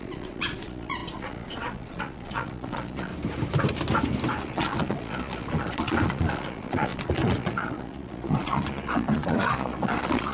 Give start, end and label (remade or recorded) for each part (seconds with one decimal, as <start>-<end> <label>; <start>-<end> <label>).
0.0-3.1 remade; 3.1-4.4 recorded; 4.4-10.3 remade